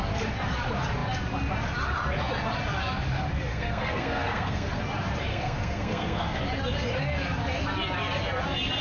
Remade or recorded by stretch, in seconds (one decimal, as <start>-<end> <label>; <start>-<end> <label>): 0.0-3.5 recorded; 3.5-4.8 remade; 4.8-5.3 recorded; 5.3-6.4 remade; 6.4-8.8 recorded